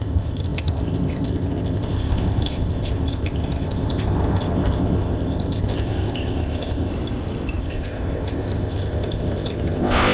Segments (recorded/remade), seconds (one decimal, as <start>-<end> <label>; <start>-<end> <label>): 0.0-6.9 remade; 6.9-7.6 recorded; 7.6-10.1 remade